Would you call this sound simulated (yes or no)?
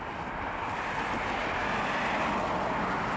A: no